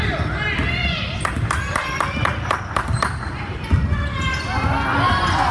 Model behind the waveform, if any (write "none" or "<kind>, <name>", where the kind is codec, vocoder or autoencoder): none